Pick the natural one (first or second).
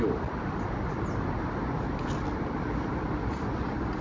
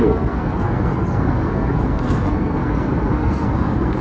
first